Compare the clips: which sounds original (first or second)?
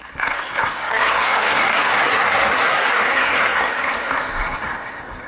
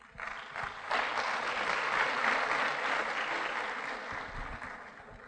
second